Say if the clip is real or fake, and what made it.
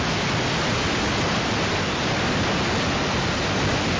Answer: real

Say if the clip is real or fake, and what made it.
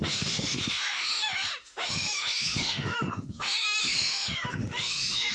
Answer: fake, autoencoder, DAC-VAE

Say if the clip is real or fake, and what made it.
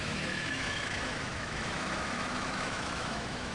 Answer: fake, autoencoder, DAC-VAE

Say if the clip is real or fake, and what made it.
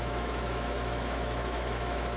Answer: fake, autoencoder, DAC-VAE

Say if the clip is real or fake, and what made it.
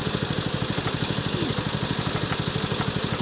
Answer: real